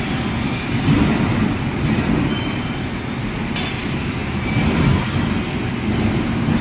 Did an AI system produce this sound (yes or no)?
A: no